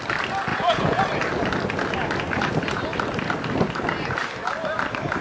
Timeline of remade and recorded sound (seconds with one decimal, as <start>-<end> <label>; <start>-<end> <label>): 0.0-0.5 recorded; 0.5-1.0 remade; 1.0-5.2 recorded